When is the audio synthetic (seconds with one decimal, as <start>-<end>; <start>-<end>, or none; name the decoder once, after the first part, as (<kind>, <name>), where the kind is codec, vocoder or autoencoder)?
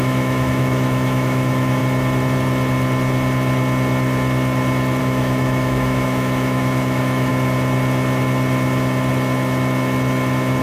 0.0-1.8 (autoencoder, DAC-VAE); 5.0-7.3